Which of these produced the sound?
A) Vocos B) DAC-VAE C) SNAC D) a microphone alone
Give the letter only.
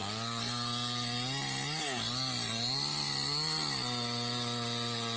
D